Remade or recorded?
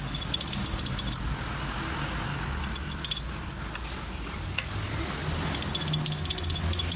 recorded